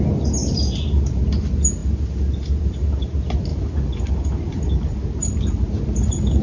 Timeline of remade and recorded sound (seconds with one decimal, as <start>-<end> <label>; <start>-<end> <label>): 0.0-0.4 recorded; 0.4-1.2 remade; 1.2-1.8 recorded; 1.8-2.7 remade; 2.7-6.4 recorded

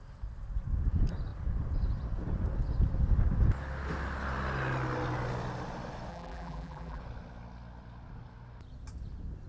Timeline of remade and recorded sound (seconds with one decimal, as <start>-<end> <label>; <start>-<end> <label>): 0.0-6.1 recorded; 6.1-7.0 remade; 7.0-9.5 recorded

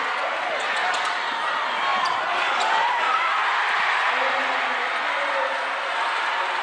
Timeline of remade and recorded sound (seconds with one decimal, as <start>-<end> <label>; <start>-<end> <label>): 0.0-6.6 recorded